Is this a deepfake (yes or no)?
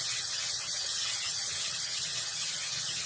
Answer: yes